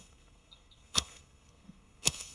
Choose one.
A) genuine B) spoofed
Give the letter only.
B